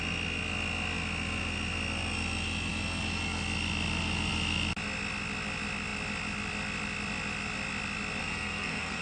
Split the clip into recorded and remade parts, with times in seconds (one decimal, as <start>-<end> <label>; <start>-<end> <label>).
0.0-8.2 recorded; 8.2-9.0 remade